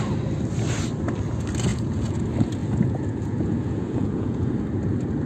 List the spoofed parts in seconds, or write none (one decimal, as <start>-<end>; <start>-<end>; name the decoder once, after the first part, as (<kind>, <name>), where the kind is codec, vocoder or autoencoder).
1.7-2.2 (vocoder, Vocos); 2.6-4.5